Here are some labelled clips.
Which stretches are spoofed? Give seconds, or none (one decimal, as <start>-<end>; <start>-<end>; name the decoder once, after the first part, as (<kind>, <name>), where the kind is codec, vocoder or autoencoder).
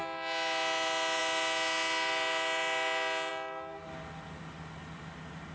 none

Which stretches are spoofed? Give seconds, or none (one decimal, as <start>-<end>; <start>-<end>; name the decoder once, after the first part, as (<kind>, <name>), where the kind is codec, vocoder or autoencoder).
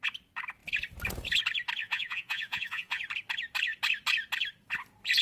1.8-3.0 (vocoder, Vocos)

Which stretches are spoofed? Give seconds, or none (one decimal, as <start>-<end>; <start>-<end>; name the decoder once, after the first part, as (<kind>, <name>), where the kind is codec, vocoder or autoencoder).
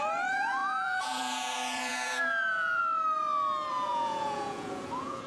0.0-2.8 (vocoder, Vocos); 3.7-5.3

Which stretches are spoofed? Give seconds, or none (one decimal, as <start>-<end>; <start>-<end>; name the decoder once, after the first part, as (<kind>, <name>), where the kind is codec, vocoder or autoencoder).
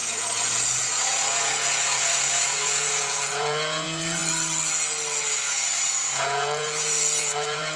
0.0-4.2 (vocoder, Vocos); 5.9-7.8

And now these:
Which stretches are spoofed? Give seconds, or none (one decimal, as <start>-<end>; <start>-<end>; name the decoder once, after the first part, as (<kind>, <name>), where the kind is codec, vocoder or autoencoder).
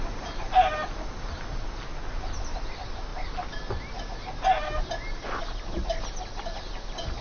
none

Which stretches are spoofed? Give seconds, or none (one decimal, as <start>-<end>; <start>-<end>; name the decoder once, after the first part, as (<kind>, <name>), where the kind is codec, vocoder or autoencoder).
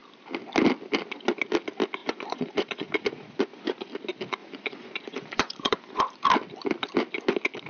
2.0-3.9 (vocoder, Vocos); 4.4-6.0